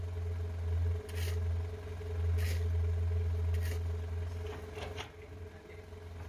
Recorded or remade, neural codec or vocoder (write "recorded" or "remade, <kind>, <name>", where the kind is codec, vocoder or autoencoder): recorded